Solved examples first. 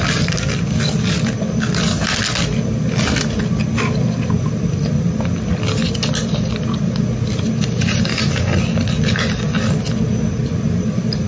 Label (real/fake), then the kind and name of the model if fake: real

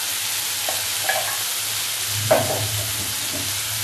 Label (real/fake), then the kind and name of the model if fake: real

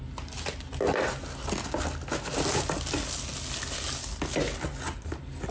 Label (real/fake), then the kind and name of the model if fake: real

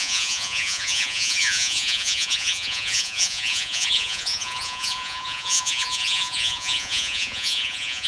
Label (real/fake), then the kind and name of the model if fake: fake, vocoder, Vocos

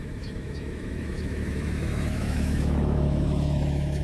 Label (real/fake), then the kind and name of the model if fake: fake, autoencoder, DAC-VAE